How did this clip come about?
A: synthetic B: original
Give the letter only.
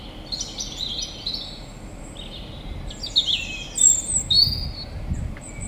B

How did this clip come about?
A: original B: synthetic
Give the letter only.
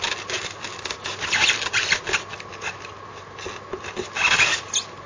A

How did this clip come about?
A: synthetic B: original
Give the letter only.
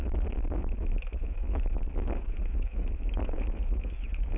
A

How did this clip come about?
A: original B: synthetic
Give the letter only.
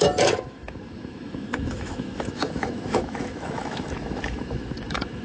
B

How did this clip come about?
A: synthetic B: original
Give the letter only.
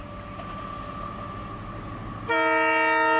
B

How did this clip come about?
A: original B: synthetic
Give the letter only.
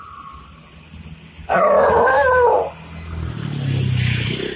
A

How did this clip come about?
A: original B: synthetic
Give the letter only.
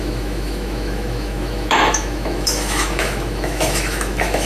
B